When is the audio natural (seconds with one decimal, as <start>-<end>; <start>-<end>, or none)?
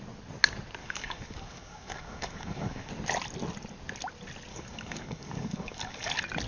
0.0-0.8; 2.9-4.5; 6.1-6.5